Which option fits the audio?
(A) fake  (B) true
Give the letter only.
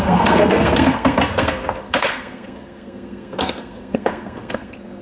A